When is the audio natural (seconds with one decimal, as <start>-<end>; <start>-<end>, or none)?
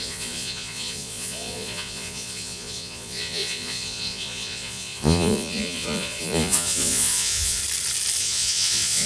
7.6-8.2